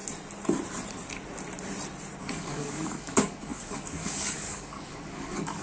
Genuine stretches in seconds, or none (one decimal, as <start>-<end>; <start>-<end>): 0.0-2.2